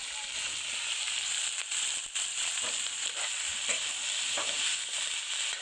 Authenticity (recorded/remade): remade